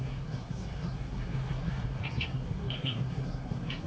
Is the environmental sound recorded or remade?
remade